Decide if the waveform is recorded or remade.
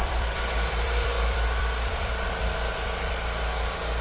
remade